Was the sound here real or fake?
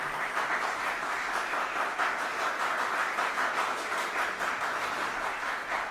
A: real